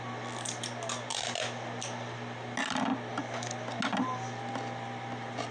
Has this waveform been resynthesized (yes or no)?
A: no